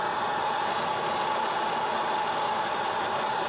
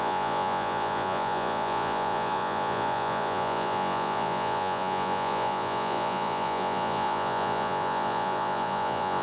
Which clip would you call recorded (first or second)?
first